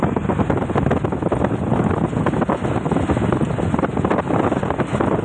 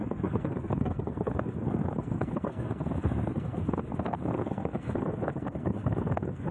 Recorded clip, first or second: first